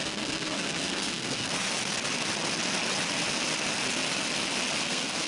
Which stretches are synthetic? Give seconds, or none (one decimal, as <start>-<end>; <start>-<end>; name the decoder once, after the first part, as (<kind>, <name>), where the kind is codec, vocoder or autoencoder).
0.0-1.6 (codec, SNAC); 4.8-5.3